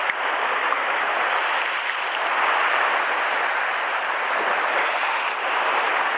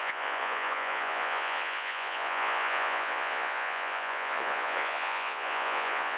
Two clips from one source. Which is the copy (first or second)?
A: second